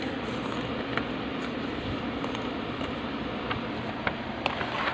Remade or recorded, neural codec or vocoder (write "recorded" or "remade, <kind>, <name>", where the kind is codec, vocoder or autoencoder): recorded